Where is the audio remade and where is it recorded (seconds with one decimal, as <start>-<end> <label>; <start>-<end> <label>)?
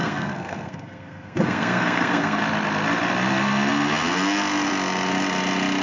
0.0-2.4 remade; 2.4-5.8 recorded